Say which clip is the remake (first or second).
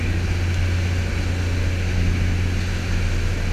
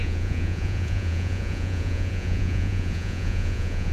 second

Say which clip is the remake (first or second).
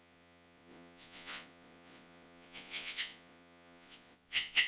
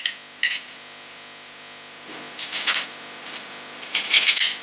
first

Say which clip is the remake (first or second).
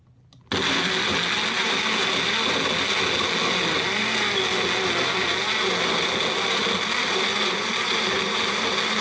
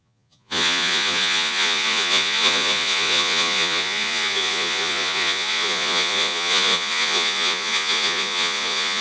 second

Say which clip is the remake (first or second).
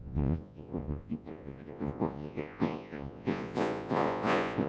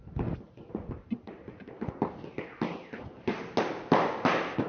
first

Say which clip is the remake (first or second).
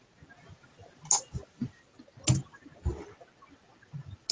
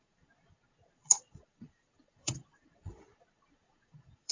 second